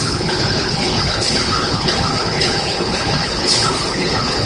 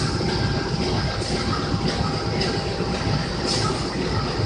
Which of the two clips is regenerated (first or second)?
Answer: first